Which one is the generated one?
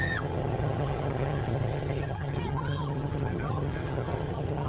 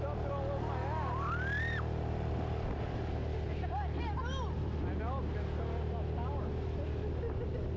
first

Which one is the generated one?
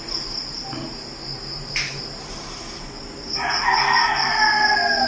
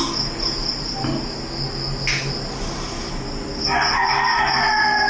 first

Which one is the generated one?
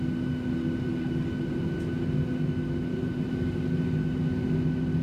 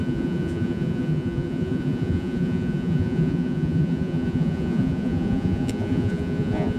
second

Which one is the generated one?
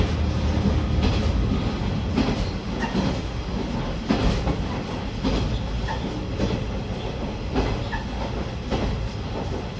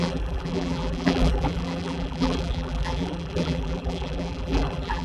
second